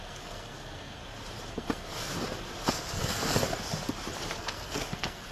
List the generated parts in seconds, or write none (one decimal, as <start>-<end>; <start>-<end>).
0.0-1.0; 1.5-2.1; 2.7-3.2; 4.3-5.3